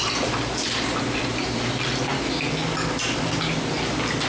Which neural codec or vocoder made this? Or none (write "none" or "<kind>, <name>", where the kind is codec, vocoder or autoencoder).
none